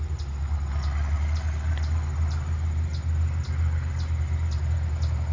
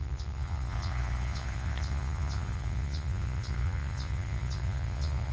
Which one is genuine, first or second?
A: first